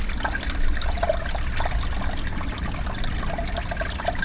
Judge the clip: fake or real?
real